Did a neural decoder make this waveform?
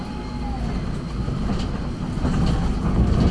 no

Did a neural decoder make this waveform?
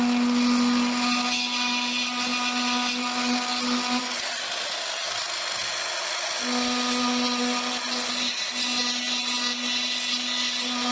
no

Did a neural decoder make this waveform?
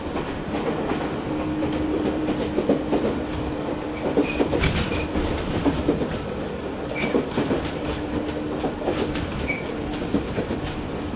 yes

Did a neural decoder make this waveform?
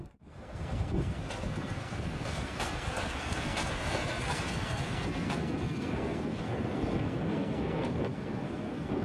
yes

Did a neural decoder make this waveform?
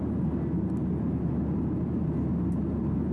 no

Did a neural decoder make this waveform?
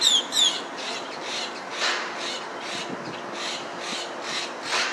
no